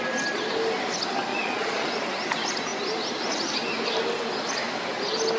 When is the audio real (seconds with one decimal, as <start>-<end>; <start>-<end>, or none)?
0.0-1.3; 1.9-5.4